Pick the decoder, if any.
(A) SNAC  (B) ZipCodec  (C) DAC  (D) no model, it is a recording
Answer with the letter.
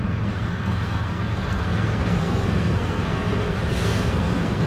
A